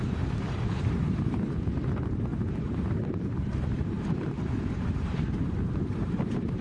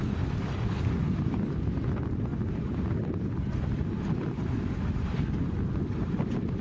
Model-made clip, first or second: first